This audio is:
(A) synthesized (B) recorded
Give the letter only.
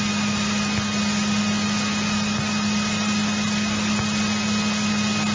B